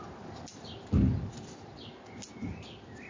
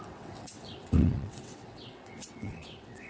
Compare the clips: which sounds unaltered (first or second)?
first